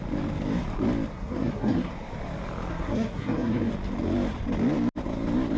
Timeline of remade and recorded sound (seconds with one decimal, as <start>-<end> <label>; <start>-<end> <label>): 0.0-1.1 recorded; 1.1-1.9 remade; 1.9-2.7 recorded; 2.7-3.7 remade; 3.7-5.6 recorded